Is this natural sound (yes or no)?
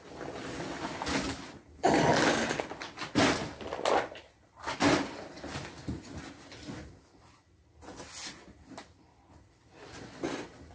yes